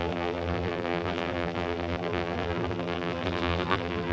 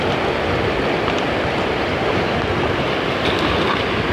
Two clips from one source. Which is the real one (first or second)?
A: second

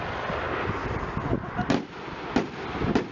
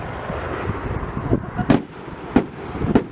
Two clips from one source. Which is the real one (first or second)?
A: first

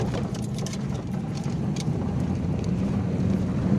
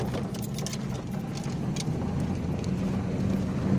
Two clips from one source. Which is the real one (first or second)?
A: second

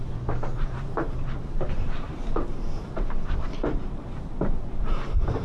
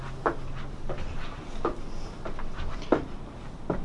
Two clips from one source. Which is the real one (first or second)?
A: second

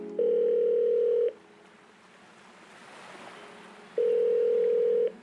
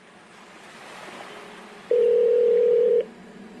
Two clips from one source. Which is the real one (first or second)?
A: first